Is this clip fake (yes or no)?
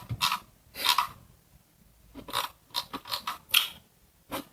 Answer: no